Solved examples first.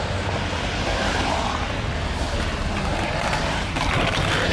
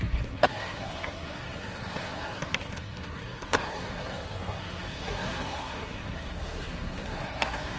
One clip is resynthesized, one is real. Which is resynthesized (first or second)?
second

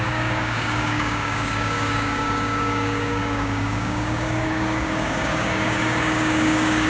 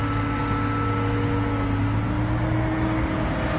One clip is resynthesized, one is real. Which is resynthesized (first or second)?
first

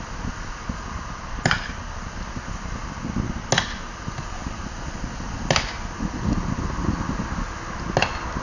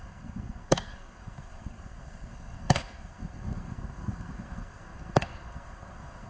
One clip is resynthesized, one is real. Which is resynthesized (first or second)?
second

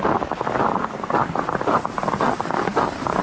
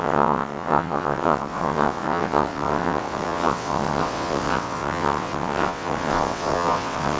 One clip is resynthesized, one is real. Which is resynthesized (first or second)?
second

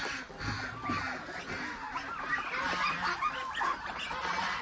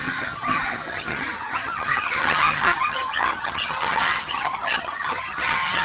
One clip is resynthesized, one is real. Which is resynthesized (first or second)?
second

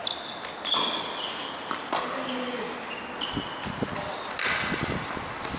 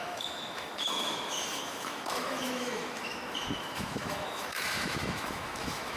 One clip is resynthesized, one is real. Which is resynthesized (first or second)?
second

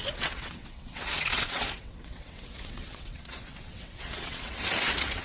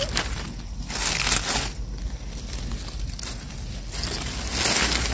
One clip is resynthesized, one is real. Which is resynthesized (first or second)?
first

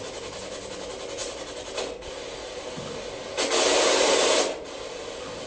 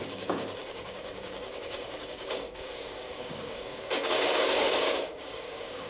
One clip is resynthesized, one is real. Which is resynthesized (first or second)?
second